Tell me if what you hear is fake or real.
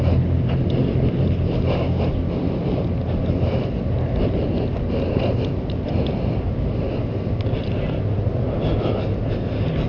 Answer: real